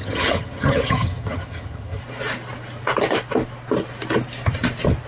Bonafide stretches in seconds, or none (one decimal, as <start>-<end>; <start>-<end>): 2.0-5.1